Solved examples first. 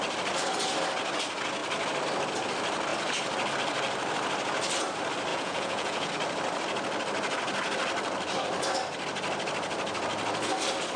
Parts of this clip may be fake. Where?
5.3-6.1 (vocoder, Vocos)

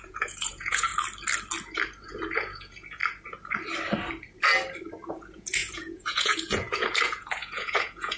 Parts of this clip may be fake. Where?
0.0-0.9 (vocoder, Vocos); 2.0-3.0; 5.1-8.2

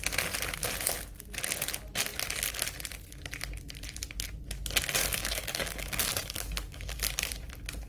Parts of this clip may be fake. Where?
5.0-7.0 (codec, DAC)

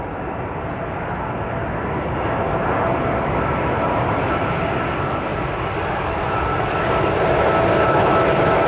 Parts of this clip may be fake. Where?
none